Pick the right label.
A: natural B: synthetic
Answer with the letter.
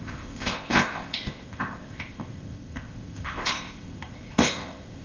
B